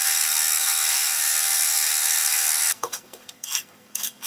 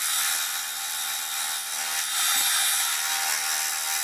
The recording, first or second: second